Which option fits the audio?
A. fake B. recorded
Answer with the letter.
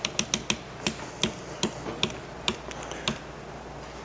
B